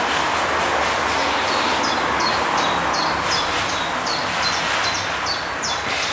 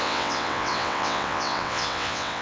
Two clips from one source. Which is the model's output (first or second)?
second